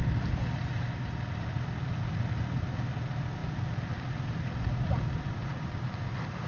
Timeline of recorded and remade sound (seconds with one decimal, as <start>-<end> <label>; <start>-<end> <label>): 0.0-6.5 recorded